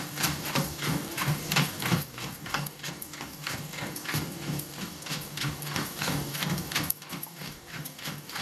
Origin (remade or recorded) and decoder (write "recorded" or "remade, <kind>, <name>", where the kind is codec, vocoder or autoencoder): remade, codec, DAC